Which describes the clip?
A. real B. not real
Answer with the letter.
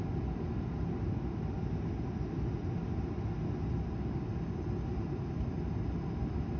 A